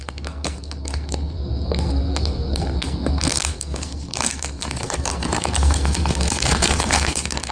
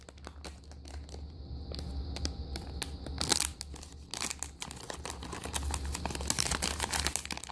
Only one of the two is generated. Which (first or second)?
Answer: first